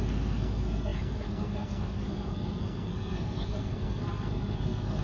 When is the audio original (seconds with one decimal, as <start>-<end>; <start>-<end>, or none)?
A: none